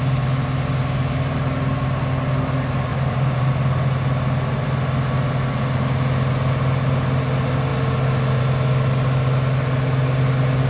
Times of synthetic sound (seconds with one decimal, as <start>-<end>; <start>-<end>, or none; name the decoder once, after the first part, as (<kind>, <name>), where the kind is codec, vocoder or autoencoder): 2.9-3.5 (vocoder, BigVGAN v2)